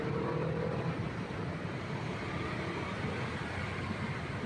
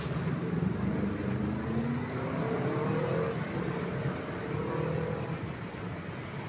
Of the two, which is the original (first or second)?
second